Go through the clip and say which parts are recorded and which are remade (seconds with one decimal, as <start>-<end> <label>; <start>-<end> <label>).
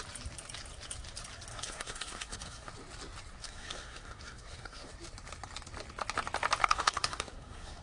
0.0-1.5 recorded; 1.5-2.7 remade; 2.7-3.4 recorded; 3.4-4.9 remade; 4.9-6.6 recorded; 6.6-7.8 remade